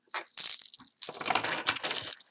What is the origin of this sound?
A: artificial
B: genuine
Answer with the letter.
B